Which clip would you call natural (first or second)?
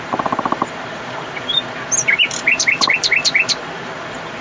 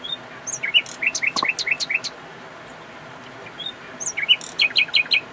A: second